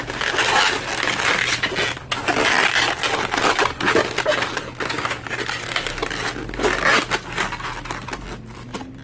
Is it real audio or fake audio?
real